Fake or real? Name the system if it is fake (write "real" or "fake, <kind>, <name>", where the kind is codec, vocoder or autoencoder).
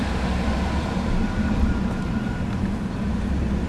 fake, vocoder, BigVGAN v2